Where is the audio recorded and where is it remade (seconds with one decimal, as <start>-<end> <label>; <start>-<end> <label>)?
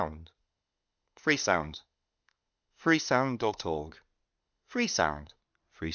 0.0-0.4 recorded; 0.4-3.9 remade; 3.9-4.4 recorded; 4.4-5.4 remade; 5.4-5.9 recorded